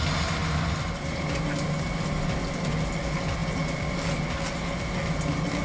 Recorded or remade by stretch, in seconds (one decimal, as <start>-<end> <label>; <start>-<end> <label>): 0.0-5.6 recorded